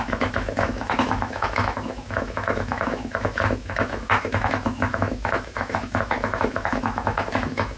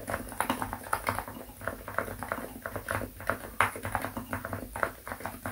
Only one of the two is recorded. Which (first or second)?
second